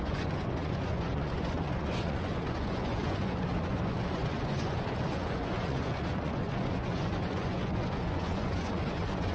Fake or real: fake